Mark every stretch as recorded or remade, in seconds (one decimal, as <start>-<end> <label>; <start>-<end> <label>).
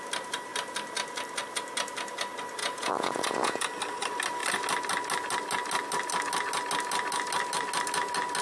0.0-2.6 recorded; 2.6-3.6 remade; 3.6-8.4 recorded